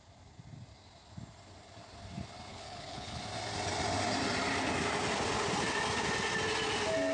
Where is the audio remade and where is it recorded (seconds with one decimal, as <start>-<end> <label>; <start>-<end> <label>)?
0.0-2.5 recorded; 2.5-3.2 remade; 3.2-7.1 recorded